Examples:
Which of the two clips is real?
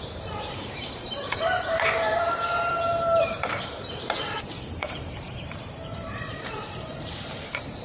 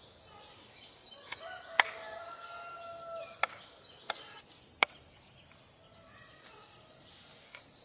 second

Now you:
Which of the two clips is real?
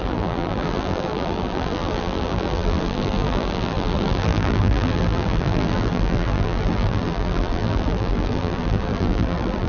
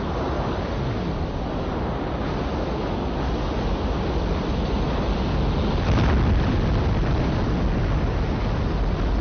second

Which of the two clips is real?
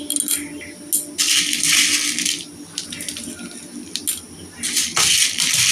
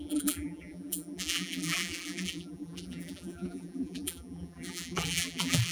first